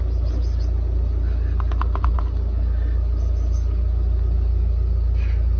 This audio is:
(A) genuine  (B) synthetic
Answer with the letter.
A